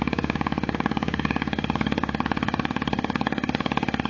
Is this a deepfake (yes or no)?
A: yes